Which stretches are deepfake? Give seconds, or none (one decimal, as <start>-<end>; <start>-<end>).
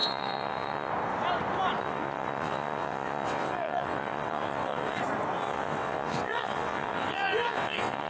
0.0-0.9; 1.8-5.0; 5.4-8.1